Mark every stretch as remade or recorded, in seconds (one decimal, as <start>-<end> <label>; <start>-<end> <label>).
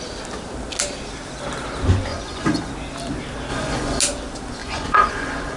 0.0-2.1 recorded; 2.1-2.7 remade; 2.7-3.5 recorded; 3.5-4.0 remade; 4.0-4.6 recorded; 4.6-5.6 remade